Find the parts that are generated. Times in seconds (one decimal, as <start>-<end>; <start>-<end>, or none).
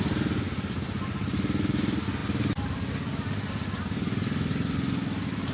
none